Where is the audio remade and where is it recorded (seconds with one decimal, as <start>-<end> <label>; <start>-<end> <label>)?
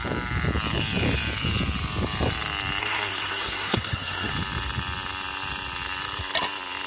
0.0-2.8 recorded; 2.8-4.3 remade; 4.3-6.9 recorded